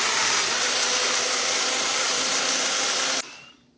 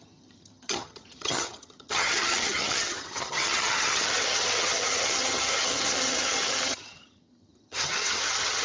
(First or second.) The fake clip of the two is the second